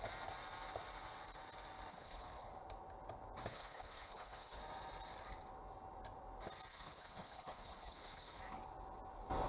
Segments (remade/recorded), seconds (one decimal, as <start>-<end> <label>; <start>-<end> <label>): 0.0-1.9 recorded; 1.9-2.5 remade; 2.5-3.5 recorded; 3.5-4.6 remade; 4.6-6.7 recorded; 6.7-8.4 remade; 8.4-9.5 recorded